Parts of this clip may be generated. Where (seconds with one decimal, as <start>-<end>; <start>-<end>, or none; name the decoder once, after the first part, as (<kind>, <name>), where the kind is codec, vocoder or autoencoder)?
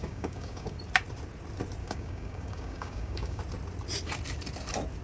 0.0-0.8 (codec, DAC); 1.8-3.4